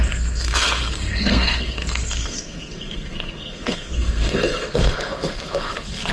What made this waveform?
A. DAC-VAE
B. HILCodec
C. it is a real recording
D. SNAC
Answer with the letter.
D